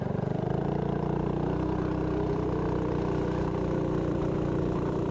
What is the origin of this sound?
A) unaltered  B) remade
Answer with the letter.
B